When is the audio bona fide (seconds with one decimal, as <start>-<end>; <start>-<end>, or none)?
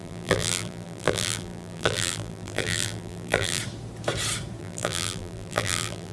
3.6-4.6